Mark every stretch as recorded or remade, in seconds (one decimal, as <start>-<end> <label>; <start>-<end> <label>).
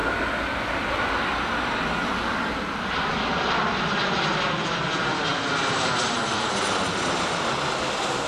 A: 0.0-8.3 recorded